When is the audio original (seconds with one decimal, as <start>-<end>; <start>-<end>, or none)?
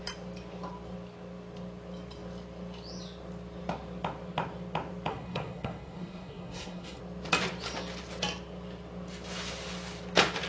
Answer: 0.0-5.1; 7.0-10.5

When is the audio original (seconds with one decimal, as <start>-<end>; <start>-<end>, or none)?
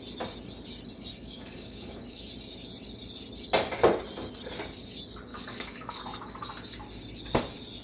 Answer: 0.0-1.1; 2.3-5.3; 6.0-7.8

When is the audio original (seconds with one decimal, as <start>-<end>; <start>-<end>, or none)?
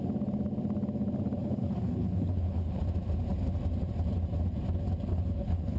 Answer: 0.0-1.4; 2.8-5.1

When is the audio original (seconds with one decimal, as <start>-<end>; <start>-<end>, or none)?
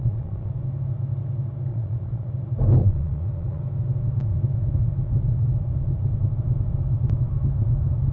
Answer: 0.5-1.7; 2.3-2.8; 3.6-8.1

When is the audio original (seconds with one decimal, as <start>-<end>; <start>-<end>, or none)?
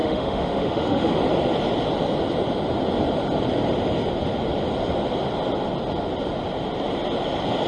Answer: 1.1-7.7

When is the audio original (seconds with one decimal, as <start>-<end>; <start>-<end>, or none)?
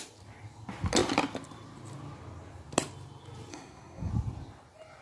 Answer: 0.0-3.5; 4.1-5.0